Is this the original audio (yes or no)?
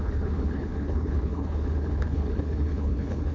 no